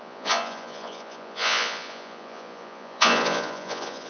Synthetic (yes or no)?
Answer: yes